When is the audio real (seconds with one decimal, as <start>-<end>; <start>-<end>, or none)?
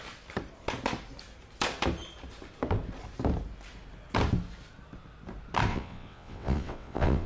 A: 0.0-5.7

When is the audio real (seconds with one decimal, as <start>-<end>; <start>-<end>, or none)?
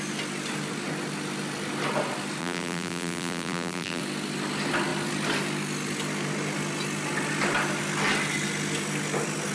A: 0.0-2.4; 4.0-9.5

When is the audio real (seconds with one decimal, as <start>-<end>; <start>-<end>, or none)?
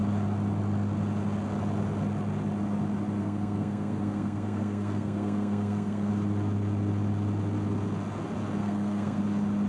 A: 0.0-3.2; 6.1-8.6; 9.2-9.7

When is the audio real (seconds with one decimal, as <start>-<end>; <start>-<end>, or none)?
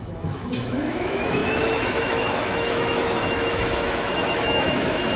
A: none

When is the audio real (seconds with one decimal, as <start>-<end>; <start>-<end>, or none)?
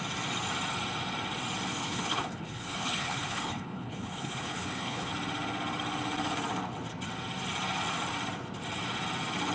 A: 0.0-1.8; 5.1-9.5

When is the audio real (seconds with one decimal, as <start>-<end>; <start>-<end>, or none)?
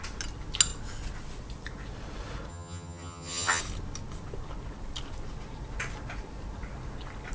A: 0.0-2.5; 3.6-7.3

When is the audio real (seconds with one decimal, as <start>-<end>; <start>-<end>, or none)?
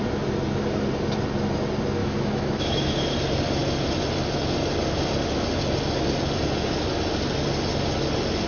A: 0.0-2.0; 2.9-8.5